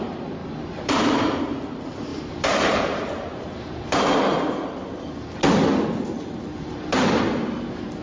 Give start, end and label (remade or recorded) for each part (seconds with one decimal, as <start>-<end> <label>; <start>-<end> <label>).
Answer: 0.0-0.4 recorded; 0.4-1.4 remade; 1.4-2.1 recorded; 2.1-4.7 remade; 4.7-6.5 recorded; 6.5-7.2 remade; 7.2-8.0 recorded